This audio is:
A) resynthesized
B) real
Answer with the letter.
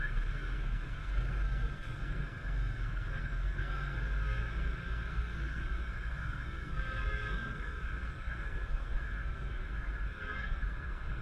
A